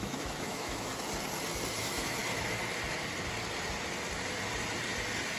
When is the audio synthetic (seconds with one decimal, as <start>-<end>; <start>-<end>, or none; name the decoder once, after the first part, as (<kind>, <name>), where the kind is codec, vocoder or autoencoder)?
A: 0.0-0.9 (autoencoder, DAC-VAE); 1.8-2.2

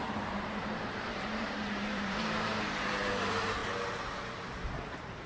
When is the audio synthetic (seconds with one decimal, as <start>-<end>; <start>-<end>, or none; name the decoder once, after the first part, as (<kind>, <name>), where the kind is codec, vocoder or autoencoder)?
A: 0.0-2.5 (vocoder, BigVGAN v2); 3.1-3.6; 4.5-5.3

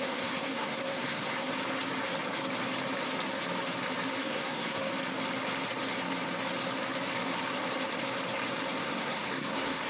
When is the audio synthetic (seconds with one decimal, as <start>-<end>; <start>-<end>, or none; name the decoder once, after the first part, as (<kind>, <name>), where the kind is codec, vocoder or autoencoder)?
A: 0.0-1.5 (codec, SNAC); 4.2-4.9; 8.8-9.9

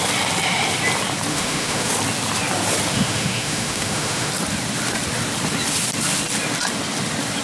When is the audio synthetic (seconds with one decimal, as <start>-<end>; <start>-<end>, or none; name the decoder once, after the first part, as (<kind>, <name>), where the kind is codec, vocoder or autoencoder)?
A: 1.3-1.9 (autoencoder, DAC-VAE); 2.9-4.3

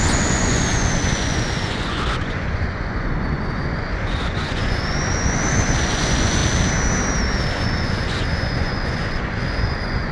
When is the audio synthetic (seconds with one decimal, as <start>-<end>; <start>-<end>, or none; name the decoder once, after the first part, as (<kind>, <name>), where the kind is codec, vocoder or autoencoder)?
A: 0.0-6.4 (vocoder, Vocos); 7.5-10.1

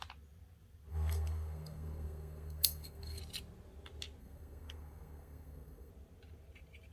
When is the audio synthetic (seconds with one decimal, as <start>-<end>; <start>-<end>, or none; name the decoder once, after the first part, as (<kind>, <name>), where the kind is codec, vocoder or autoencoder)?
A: 0.9-3.2 (codec, SNAC); 4.2-5.9